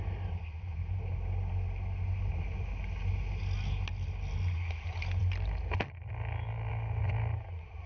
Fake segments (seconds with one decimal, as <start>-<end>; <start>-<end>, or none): none